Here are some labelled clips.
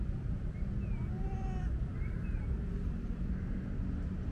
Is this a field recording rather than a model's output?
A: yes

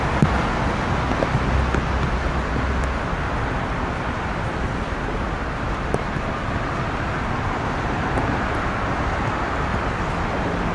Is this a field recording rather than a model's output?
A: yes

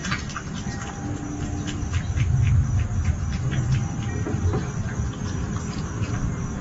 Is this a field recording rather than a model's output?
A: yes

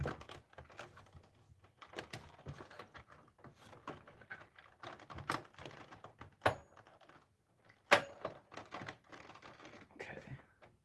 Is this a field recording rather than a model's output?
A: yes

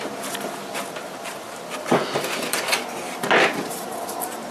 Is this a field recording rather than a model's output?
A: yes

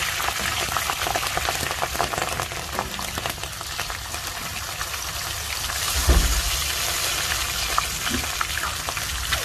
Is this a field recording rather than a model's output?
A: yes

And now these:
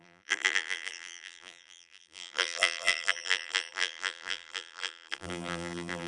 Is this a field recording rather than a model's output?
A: no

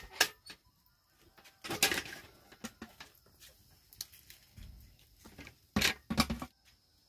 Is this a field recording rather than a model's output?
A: yes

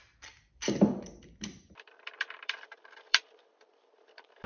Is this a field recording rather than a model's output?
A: no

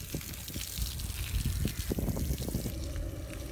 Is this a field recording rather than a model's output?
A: yes